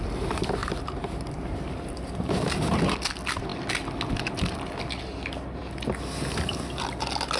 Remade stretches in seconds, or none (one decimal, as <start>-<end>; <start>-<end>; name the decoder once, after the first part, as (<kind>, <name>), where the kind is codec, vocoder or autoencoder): 0.6-2.5 (vocoder, BigVGAN v2)